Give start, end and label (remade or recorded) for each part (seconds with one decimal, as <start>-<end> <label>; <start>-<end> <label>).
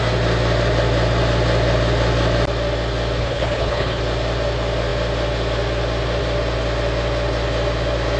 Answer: 0.0-3.2 recorded; 3.2-4.0 remade; 4.0-8.2 recorded